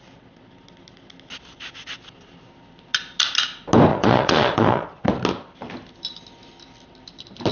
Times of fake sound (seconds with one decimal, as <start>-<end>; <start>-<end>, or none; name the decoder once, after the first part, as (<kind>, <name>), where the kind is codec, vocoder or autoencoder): 3.9-5.1 (vocoder, Vocos)

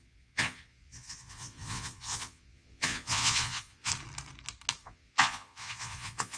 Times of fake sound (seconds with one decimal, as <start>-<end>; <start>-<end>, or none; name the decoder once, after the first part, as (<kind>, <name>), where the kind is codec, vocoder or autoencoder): 0.0-3.9 (vocoder, Vocos); 4.8-6.4

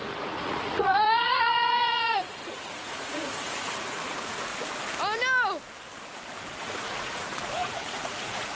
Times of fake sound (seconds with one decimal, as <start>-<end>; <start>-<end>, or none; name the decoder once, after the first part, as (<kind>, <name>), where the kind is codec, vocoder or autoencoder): 0.0-4.5 (vocoder, Vocos); 6.6-8.6

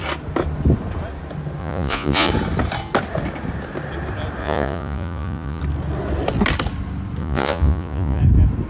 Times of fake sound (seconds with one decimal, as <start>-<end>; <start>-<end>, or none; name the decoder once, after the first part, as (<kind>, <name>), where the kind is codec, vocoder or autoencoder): 1.6-2.3 (vocoder, Vocos); 4.4-5.6; 7.2-8.2

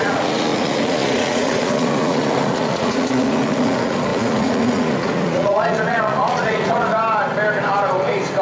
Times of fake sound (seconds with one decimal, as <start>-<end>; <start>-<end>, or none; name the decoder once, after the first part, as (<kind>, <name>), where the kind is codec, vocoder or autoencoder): 0.0-6.9 (vocoder, Vocos)

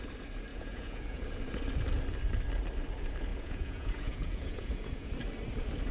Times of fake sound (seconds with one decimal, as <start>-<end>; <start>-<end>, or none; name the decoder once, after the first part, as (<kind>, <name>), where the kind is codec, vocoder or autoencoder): 0.5-1.2 (vocoder, Vocos); 3.3-5.1

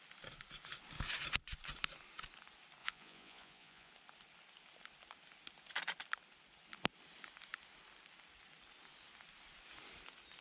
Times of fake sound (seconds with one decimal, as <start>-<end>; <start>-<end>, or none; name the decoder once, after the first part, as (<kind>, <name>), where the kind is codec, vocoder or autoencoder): 2.8-3.9 (vocoder, Vocos)